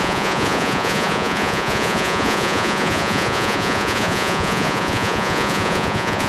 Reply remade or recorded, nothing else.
remade